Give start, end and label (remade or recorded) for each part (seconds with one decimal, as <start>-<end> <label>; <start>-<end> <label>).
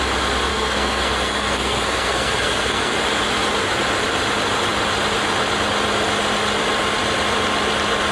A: 0.0-0.5 recorded; 0.5-3.0 remade; 3.0-8.1 recorded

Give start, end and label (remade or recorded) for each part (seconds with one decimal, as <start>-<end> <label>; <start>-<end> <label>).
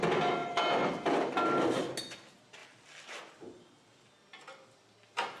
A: 0.0-5.4 recorded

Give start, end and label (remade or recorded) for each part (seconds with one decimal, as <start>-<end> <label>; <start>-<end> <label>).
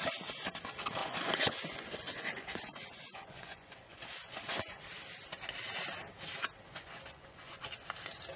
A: 0.0-1.0 recorded; 1.0-4.8 remade; 4.8-6.7 recorded; 6.7-7.6 remade; 7.6-8.4 recorded